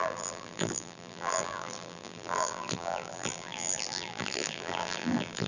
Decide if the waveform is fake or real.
fake